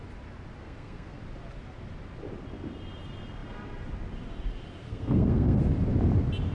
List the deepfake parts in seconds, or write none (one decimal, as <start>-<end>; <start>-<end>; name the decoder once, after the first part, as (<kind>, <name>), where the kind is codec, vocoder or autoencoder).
0.6-1.2 (codec, SNAC); 4.8-5.6